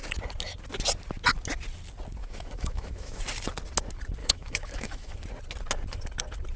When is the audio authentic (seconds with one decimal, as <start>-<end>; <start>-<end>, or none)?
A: 0.0-2.2; 3.2-4.2; 5.2-6.6